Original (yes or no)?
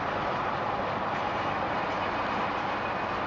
yes